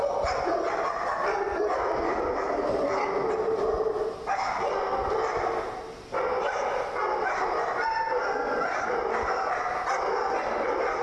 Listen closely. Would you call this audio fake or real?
real